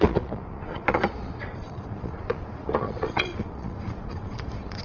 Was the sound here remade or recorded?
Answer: remade